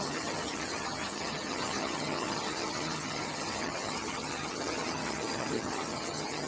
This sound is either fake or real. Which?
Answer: fake